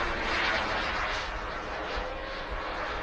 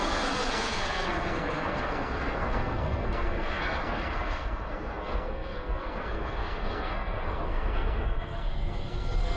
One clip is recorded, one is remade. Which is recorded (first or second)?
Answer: first